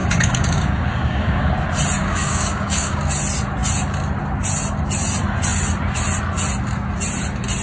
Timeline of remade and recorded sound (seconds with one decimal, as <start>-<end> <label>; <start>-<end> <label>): 0.0-1.5 remade; 1.5-2.0 recorded; 2.0-3.0 remade; 3.0-7.6 recorded